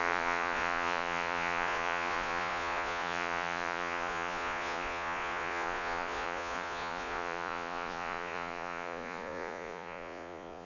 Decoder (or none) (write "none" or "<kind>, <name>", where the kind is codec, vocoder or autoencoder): vocoder, Vocos